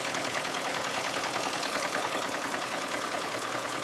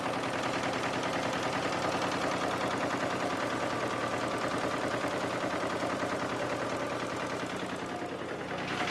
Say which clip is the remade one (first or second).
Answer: first